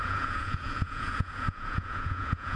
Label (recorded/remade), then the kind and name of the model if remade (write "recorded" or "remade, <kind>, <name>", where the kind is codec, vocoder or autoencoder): remade, vocoder, Vocos